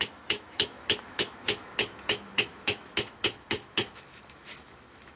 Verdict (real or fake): fake